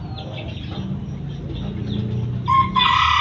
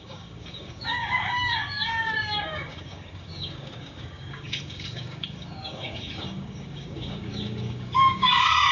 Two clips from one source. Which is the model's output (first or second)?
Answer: second